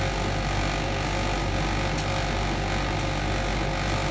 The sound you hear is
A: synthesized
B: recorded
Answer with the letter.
B